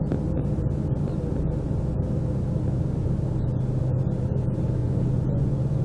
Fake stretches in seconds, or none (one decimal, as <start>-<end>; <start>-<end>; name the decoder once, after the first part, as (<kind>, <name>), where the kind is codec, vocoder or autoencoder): 4.8-5.8 (vocoder, Vocos)